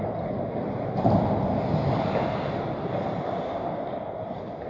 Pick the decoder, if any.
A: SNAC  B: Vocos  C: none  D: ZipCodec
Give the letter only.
C